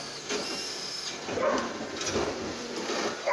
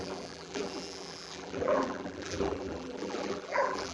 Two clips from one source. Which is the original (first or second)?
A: first